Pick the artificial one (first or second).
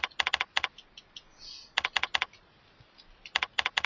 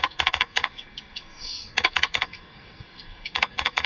second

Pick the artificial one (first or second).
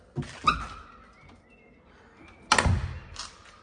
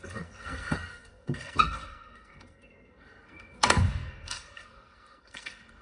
second